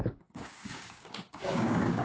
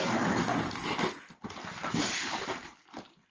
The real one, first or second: second